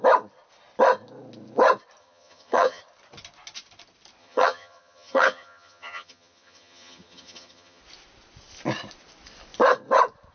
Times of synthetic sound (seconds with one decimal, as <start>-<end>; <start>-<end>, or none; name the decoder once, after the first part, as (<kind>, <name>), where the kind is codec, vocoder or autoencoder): 2.0-2.8 (vocoder, HiFi-GAN); 4.2-7.8